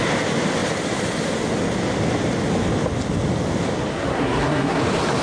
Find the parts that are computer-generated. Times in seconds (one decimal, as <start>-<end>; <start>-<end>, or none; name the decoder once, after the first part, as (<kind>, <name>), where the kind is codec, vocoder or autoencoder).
3.9-4.8 (codec, SNAC)